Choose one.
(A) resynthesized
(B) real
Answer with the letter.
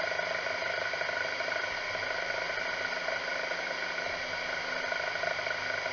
B